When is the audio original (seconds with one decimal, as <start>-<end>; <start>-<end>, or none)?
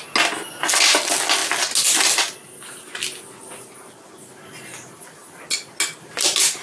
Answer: 0.0-6.6